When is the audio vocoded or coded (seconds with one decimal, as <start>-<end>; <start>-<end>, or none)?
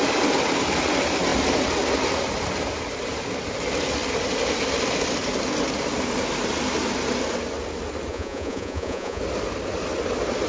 8.1-9.2